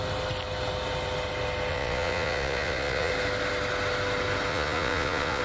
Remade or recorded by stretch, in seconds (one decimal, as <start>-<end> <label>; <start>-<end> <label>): 0.0-1.7 recorded; 1.7-3.1 remade; 3.1-4.5 recorded; 4.5-5.4 remade